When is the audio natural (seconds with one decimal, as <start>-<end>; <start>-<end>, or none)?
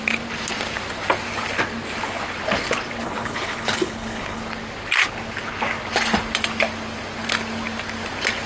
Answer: 0.0-3.0; 4.4-8.5